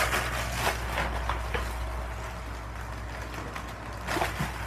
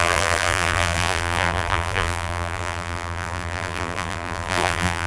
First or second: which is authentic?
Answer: first